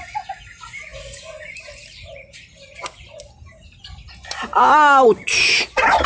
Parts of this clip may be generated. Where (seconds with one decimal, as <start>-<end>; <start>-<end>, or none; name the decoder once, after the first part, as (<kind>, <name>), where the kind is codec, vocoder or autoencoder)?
none

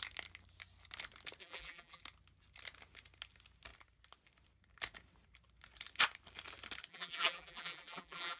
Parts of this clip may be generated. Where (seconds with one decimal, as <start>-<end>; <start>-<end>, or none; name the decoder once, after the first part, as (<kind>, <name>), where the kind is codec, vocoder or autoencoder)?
1.4-2.0 (vocoder, BigVGAN v2); 6.9-8.4

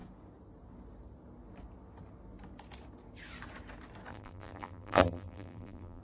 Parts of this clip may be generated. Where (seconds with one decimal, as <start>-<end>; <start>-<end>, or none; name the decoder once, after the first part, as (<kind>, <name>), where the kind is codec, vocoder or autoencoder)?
4.1-6.0 (vocoder, BigVGAN v2)

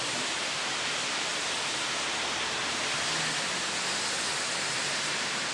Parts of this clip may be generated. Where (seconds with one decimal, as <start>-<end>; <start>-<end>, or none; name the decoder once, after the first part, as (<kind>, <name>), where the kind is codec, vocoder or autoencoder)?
0.0-1.3 (vocoder, BigVGAN v2); 4.6-5.5